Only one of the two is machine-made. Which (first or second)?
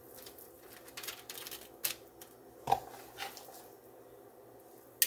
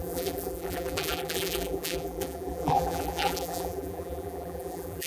second